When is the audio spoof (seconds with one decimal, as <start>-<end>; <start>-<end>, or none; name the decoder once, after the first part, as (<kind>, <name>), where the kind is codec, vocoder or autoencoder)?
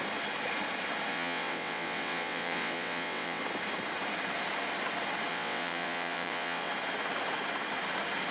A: 1.1-3.4 (vocoder, WaveNeXt); 5.3-6.7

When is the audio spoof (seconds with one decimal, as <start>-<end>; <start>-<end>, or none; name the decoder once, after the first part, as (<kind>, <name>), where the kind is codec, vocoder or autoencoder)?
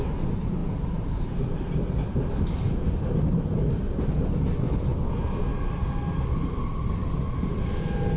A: 0.6-4.8 (vocoder, BigVGAN v2); 5.5-6.1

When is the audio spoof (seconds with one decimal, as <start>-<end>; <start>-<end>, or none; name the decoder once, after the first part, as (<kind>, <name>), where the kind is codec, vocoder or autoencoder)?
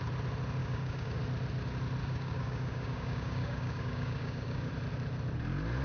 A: 0.6-1.2 (codec, DAC); 2.0-4.7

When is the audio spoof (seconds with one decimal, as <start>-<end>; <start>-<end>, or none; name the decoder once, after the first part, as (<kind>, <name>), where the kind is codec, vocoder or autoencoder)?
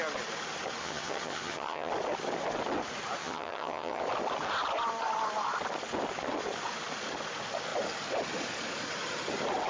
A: 0.8-1.9 (vocoder, HiFi-GAN); 3.2-4.0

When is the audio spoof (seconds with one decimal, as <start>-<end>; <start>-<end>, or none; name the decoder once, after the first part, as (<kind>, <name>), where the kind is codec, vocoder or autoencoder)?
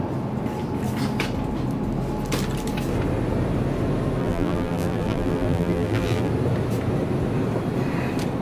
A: 4.2-6.3 (vocoder, BigVGAN v2)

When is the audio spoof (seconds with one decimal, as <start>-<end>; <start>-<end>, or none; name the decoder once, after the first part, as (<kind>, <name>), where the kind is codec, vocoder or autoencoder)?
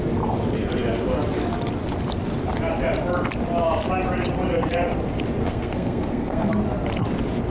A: 5.4-6.5 (codec, SNAC)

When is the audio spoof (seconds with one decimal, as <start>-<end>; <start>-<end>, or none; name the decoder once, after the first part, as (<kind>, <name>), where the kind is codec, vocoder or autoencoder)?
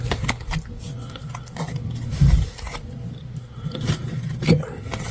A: 1.0-3.9 (vocoder, BigVGAN v2)